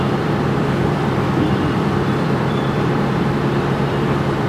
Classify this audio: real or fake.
fake